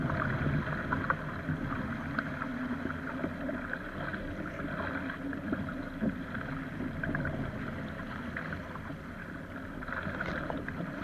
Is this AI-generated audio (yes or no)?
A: no